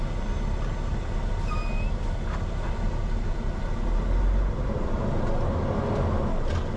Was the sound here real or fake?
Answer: real